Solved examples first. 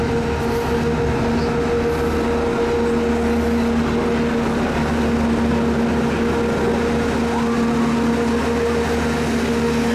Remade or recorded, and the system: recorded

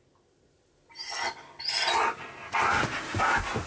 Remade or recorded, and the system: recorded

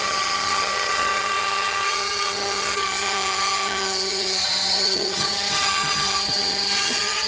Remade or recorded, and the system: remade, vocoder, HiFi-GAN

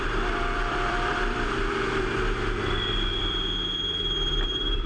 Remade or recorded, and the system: remade, vocoder, BigVGAN v2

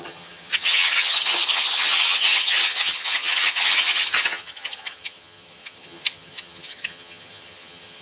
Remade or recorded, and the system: remade, vocoder, HiFi-GAN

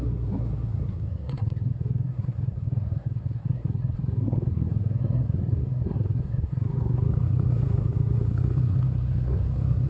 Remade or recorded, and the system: remade, codec, SNAC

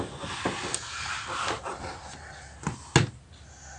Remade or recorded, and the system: recorded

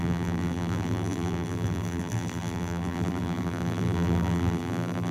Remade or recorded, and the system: remade, vocoder, BigVGAN v2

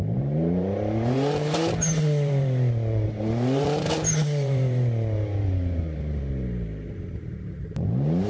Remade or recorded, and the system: remade, vocoder, BigVGAN v2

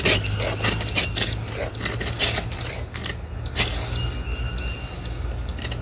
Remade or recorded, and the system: recorded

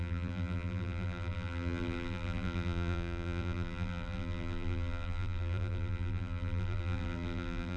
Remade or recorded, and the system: remade, vocoder, BigVGAN v2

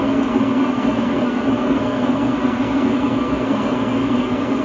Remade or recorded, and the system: remade, codec, SNAC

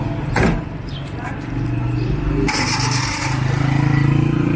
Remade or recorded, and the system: recorded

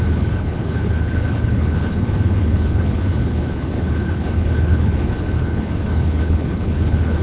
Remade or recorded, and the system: remade, codec, HILCodec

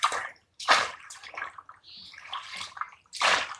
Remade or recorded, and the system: remade, vocoder, BigVGAN v2